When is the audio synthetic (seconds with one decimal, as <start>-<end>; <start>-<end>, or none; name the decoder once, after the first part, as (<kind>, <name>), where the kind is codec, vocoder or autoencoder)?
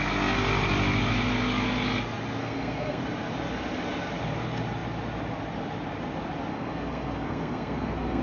2.4-3.0 (codec, SNAC); 6.5-8.2